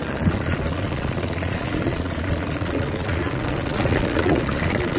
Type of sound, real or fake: fake